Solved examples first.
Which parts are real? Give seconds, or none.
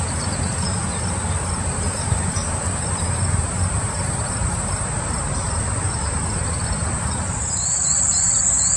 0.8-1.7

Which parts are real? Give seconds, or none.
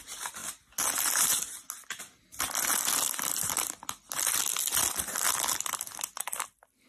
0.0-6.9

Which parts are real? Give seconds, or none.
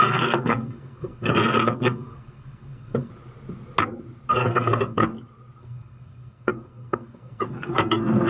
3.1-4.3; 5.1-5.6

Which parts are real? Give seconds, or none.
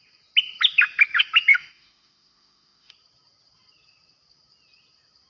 0.0-1.5; 2.9-5.3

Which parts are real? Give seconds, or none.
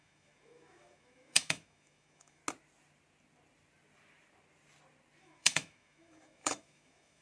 2.4-5.2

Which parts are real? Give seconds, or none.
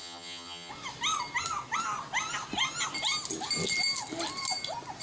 0.7-5.0